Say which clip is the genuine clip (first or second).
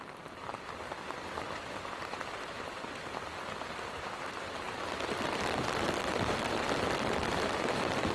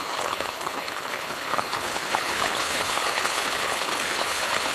first